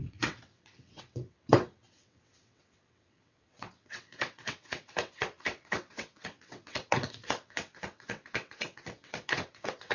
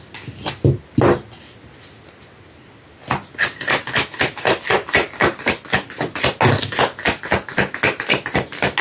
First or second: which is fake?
first